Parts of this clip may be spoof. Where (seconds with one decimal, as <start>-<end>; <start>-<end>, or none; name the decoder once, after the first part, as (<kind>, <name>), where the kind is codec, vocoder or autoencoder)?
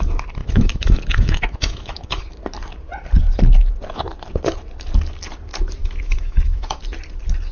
0.4-2.2 (autoencoder, DAC-VAE); 5.8-6.8